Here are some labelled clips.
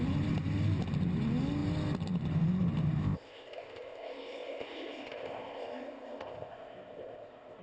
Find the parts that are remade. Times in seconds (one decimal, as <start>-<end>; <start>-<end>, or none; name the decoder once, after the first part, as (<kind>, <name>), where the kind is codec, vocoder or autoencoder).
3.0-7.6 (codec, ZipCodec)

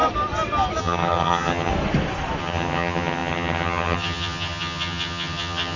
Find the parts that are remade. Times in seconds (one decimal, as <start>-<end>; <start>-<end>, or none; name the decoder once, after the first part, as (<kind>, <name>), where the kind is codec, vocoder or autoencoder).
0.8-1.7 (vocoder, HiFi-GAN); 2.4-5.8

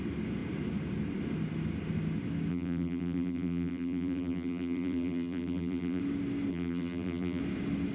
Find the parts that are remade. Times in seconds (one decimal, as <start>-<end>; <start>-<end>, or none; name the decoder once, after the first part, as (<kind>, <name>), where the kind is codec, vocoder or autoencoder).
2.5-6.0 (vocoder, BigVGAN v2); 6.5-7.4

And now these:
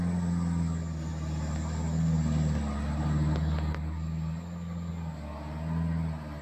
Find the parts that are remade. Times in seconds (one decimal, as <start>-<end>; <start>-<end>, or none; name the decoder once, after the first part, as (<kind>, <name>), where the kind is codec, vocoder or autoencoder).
none

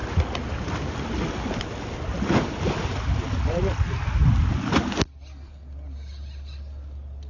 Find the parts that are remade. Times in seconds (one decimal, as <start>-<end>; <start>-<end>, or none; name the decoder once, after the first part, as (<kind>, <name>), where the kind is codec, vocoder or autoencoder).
none